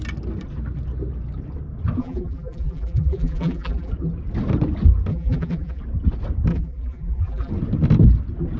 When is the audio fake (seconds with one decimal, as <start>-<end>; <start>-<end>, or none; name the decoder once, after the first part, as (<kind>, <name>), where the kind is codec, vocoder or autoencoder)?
2.0-3.9 (vocoder, BigVGAN v2); 5.1-5.8; 6.5-7.5